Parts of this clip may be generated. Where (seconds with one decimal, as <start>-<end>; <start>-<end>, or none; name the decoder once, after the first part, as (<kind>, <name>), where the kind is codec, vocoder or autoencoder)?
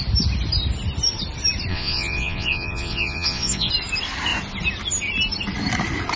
1.7-3.7 (vocoder, Vocos)